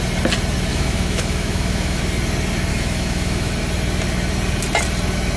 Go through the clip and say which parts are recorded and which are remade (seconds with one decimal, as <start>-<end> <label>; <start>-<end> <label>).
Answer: 0.0-0.7 recorded; 0.7-2.0 remade; 2.0-2.7 recorded; 2.7-3.5 remade; 3.5-5.4 recorded